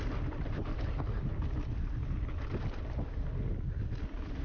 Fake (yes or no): no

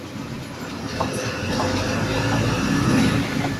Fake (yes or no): no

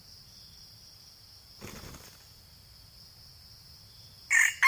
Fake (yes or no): no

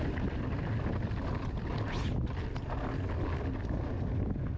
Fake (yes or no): no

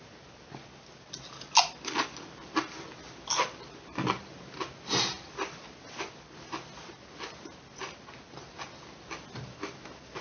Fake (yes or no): no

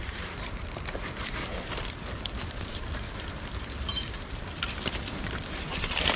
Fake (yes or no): yes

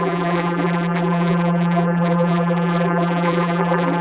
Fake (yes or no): yes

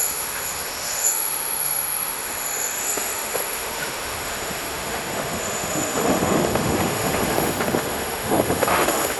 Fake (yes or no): yes